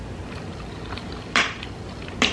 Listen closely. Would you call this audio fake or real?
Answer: real